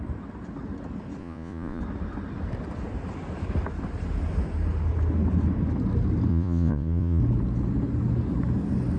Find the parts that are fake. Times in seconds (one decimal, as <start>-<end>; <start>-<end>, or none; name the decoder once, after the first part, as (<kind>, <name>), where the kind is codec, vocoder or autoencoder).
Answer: 1.2-1.8 (vocoder, Vocos); 6.3-7.2